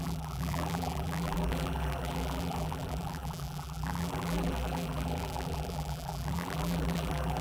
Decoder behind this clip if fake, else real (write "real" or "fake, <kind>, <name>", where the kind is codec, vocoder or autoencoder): fake, vocoder, BigVGAN v2